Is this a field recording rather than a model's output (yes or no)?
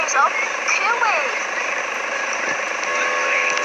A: yes